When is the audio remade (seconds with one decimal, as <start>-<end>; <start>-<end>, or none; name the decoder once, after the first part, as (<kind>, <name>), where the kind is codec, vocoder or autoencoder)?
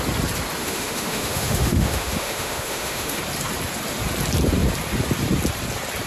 0.6-3.2 (autoencoder, DAC-VAE)